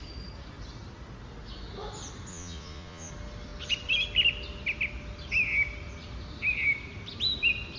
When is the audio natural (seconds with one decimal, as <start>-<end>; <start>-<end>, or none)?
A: 0.0-2.3; 3.1-7.8